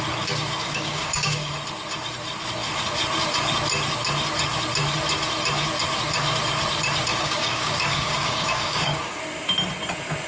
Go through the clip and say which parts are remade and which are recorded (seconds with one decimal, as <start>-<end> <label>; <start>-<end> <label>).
0.0-0.6 recorded; 0.6-1.5 remade; 1.5-7.1 recorded; 7.1-9.2 remade; 9.2-10.3 recorded